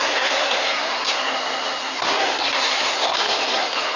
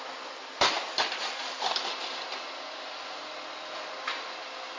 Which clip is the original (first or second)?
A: second